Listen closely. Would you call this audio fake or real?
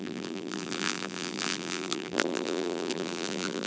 fake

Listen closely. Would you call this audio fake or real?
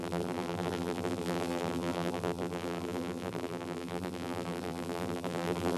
fake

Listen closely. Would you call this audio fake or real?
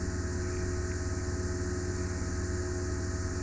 real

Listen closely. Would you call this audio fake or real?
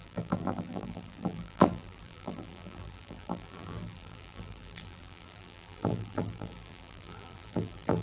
fake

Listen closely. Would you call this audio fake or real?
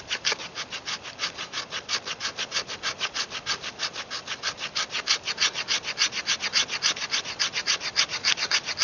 real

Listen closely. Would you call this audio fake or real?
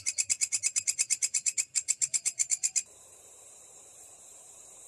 fake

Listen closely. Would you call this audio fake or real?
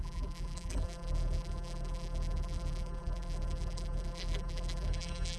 fake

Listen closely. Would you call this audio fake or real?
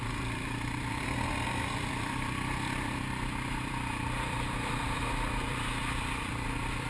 fake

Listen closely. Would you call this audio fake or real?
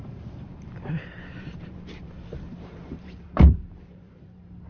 fake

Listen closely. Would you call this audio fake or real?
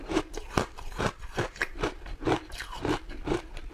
fake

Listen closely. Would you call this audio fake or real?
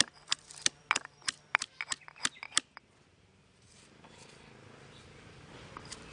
fake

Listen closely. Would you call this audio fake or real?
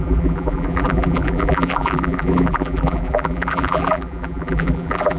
fake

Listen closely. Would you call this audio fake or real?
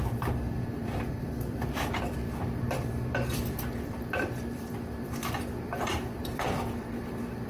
fake